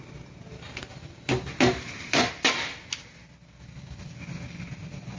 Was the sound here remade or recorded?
recorded